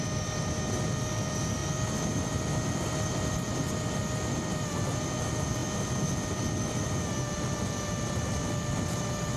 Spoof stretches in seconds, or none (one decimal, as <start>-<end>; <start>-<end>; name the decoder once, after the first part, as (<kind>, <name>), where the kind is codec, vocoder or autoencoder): none